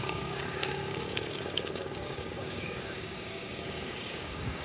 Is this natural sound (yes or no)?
no